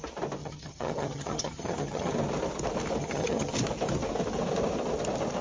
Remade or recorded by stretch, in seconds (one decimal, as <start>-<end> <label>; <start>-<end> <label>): 0.0-0.4 recorded; 0.4-2.1 remade; 2.1-3.0 recorded; 3.0-3.5 remade; 3.5-5.4 recorded